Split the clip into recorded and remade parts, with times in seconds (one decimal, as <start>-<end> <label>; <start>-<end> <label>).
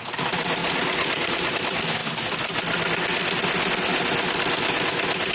0.0-0.6 recorded; 0.6-1.5 remade; 1.5-5.3 recorded